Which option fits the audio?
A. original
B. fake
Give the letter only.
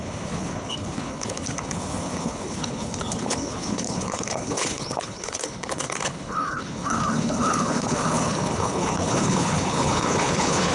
B